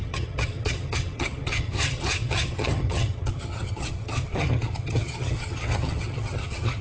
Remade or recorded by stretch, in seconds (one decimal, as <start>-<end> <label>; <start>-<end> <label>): 0.0-6.8 remade